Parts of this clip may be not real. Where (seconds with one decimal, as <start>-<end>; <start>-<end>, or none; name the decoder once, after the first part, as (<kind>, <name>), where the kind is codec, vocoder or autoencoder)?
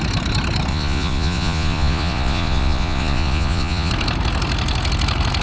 0.7-3.9 (vocoder, Vocos)